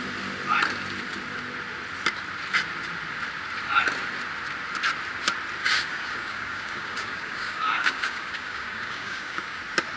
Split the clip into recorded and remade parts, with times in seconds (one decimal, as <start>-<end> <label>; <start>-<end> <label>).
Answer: 0.0-5.6 recorded; 5.6-9.6 remade; 9.6-10.0 recorded